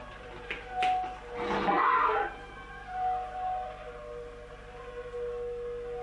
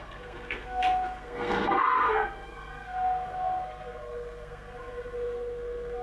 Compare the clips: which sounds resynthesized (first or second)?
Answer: second